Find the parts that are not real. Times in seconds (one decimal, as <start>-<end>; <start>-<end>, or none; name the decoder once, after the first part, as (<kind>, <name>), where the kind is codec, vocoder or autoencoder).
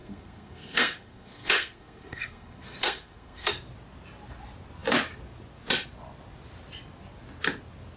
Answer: 0.0-3.5 (codec, SNAC)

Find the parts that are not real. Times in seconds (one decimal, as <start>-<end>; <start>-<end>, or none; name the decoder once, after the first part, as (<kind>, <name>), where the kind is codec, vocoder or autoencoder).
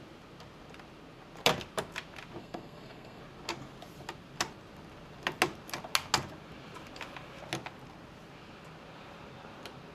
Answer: 2.4-3.2 (codec, SNAC)